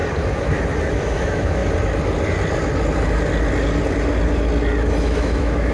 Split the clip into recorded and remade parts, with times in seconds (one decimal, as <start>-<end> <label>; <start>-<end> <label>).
0.0-0.9 recorded; 0.9-1.6 remade; 1.6-5.0 recorded; 5.0-5.7 remade